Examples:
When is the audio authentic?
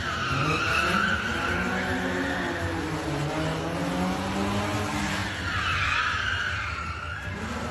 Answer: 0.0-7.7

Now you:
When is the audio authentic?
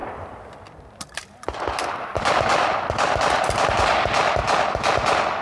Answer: 3.2-4.4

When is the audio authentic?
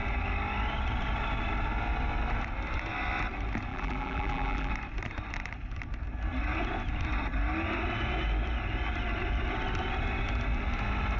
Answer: 0.0-3.7; 4.7-11.2